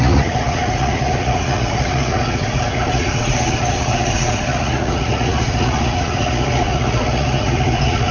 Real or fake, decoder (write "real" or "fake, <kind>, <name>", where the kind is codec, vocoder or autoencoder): fake, vocoder, Vocos